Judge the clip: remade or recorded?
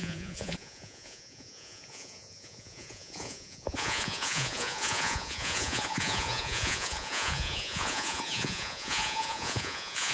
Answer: remade